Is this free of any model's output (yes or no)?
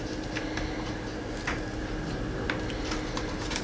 yes